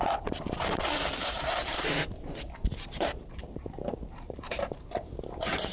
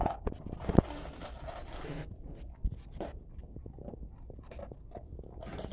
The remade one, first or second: first